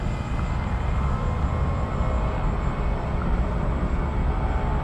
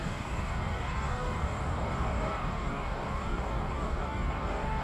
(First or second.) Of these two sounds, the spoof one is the second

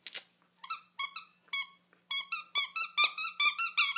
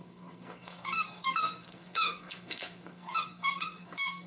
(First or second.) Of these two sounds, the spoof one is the second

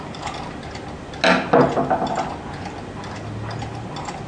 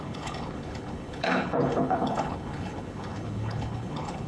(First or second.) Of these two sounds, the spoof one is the second